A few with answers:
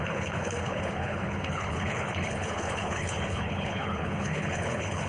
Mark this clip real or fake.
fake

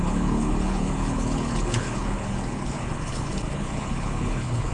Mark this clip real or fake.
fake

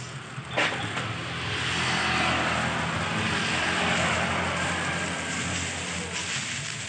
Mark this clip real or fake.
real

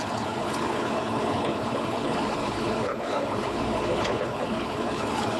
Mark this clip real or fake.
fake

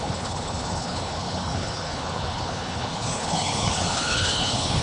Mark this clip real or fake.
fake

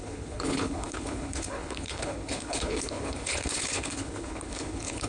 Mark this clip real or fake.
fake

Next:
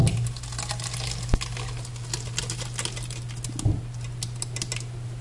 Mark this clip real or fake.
real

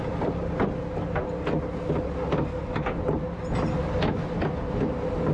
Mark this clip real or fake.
real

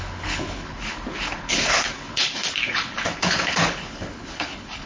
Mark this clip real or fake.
fake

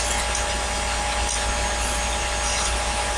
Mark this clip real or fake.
real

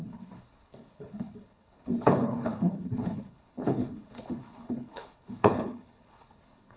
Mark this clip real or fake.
fake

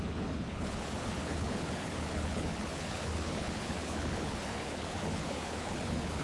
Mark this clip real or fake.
fake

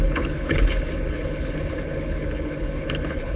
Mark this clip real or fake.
fake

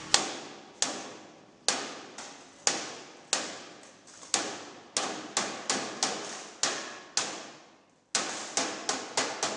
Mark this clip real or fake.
real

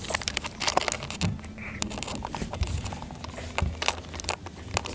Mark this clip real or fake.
real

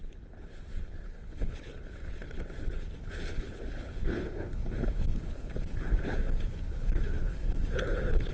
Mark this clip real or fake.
fake